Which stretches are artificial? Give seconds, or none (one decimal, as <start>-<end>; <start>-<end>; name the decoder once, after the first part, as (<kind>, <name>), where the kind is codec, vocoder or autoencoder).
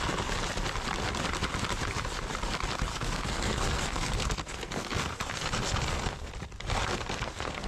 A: 2.9-6.3 (codec, SNAC); 6.8-7.7